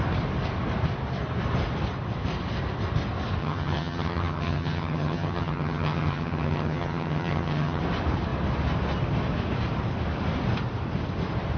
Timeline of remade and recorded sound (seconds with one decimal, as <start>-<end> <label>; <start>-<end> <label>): 0.0-3.4 recorded; 3.4-7.8 remade; 7.8-11.6 recorded